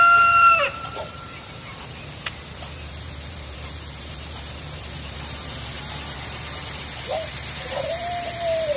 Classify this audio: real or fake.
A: fake